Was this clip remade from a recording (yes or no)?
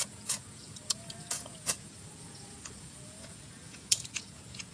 yes